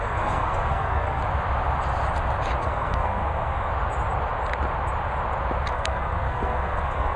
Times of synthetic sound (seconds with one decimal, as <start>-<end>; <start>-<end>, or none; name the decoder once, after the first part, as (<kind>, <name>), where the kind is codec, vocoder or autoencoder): 0.0-1.2 (codec, SNAC); 2.6-3.7; 5.7-7.2